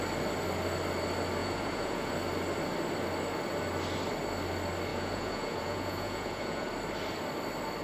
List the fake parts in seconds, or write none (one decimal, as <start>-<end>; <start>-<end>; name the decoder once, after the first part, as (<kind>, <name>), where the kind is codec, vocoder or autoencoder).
1.4-2.1 (vocoder, Vocos); 4.9-6.7